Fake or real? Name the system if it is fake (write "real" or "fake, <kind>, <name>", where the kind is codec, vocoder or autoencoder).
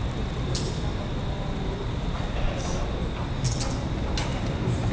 real